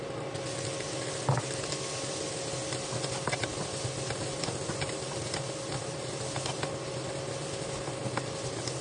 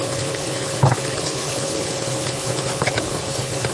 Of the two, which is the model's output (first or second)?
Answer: second